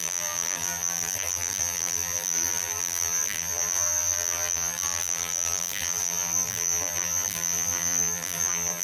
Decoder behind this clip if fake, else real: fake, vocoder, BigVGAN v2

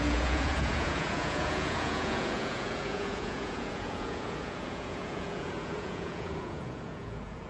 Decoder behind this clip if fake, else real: fake, vocoder, Vocos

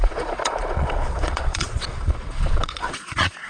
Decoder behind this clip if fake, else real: fake, vocoder, Vocos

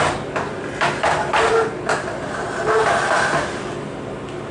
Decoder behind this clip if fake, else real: real